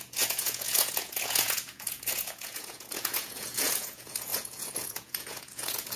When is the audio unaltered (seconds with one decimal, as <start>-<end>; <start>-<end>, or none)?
none